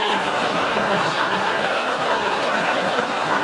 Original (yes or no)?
no